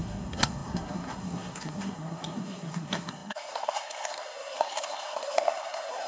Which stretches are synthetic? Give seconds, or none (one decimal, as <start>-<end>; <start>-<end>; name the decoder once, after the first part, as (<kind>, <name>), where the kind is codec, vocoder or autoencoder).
0.0-6.1 (codec, SNAC)